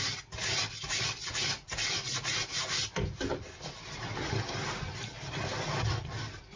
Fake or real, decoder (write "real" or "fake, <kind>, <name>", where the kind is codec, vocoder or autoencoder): real